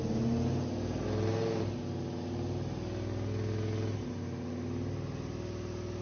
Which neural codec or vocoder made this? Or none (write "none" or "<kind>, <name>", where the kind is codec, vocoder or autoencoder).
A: none